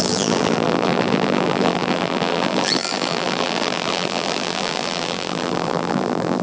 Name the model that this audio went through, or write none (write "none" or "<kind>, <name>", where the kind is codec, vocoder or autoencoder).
vocoder, BigVGAN v2